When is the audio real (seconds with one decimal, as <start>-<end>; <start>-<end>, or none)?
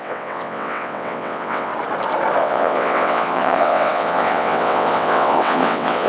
1.7-2.4